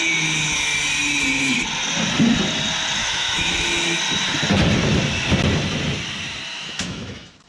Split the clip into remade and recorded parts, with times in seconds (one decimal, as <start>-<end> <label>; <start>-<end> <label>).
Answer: 0.0-3.0 recorded; 3.0-3.5 remade; 3.5-6.5 recorded; 6.5-7.5 remade